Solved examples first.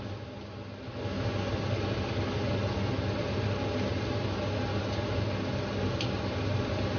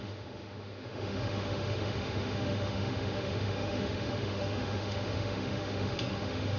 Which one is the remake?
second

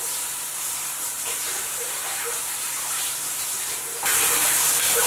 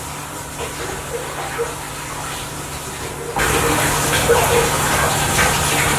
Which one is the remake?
first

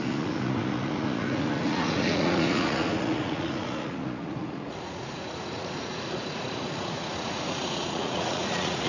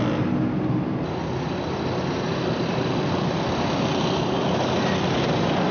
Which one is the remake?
first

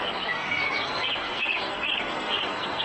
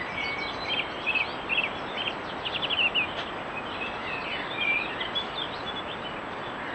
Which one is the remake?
first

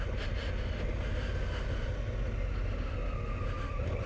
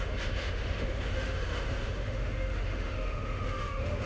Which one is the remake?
second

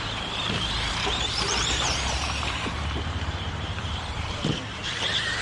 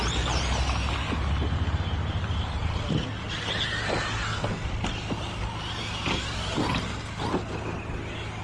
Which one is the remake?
first